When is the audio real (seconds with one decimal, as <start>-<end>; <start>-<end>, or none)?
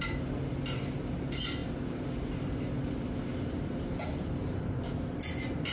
0.0-5.7